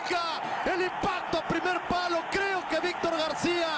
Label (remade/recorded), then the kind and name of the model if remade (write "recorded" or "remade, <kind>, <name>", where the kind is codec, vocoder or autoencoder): recorded